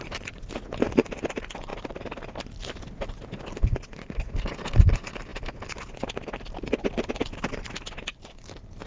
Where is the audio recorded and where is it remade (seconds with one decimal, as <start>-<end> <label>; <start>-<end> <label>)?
0.0-1.7 recorded; 1.7-2.8 remade; 2.8-8.9 recorded